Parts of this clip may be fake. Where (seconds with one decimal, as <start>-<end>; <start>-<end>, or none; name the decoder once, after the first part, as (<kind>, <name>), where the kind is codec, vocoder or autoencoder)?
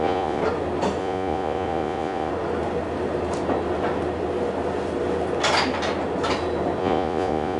0.0-0.4 (vocoder, Vocos); 1.0-2.3; 6.8-7.6